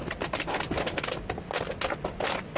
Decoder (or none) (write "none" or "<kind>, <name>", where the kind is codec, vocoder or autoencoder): none